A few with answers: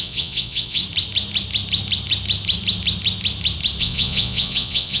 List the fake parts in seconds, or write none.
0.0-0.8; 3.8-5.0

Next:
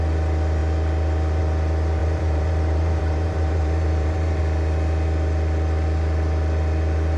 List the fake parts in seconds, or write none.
2.0-4.4

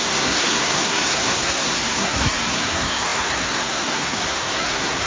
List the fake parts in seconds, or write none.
0.0-5.1

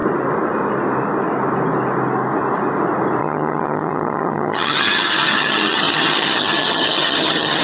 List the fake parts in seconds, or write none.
3.2-7.6

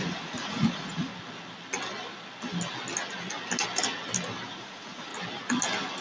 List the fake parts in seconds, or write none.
0.0-1.1; 4.6-5.1

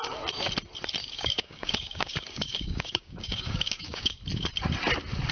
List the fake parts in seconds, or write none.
1.0-4.2

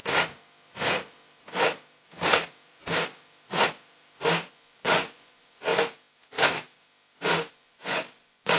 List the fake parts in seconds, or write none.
4.5-5.7; 7.5-8.6

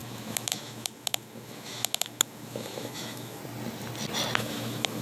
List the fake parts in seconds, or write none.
0.0-3.4; 4.4-5.0